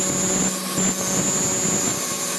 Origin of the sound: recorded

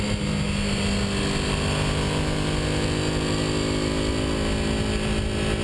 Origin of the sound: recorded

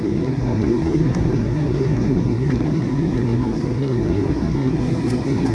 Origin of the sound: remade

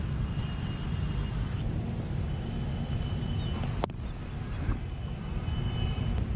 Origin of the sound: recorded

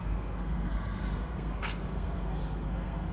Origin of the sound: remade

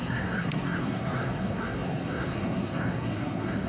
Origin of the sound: remade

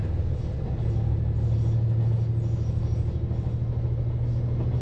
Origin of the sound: recorded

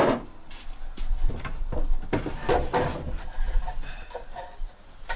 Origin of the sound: recorded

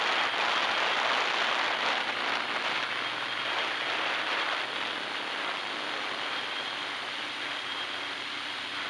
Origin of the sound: recorded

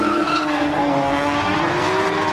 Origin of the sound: remade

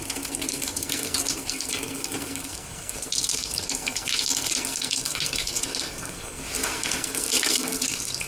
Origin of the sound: remade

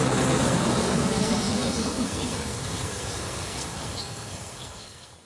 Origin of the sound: remade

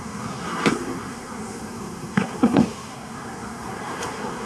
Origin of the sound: remade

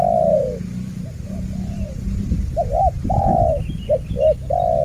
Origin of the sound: recorded